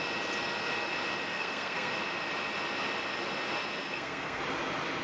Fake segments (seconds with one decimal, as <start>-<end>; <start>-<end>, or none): 1.3-1.9; 3.8-4.4